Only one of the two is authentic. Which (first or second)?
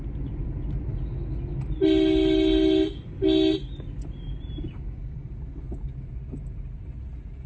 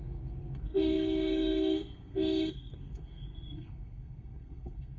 first